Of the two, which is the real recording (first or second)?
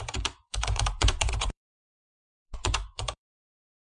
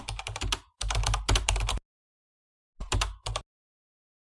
second